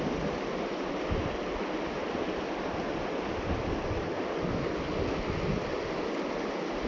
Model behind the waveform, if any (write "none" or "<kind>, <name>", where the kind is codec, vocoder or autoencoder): none